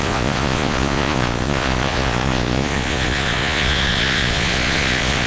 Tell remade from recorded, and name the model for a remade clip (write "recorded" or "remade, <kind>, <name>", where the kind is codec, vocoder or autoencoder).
remade, vocoder, Vocos